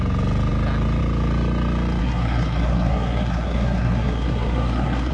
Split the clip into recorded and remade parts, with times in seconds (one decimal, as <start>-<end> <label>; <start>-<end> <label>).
0.0-2.0 recorded; 2.0-5.1 remade